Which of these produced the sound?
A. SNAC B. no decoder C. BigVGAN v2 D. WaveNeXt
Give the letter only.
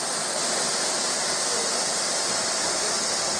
B